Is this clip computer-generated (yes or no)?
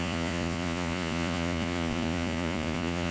yes